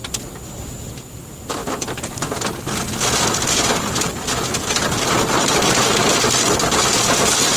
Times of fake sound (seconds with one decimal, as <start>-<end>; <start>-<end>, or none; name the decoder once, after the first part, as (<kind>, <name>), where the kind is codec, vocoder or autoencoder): none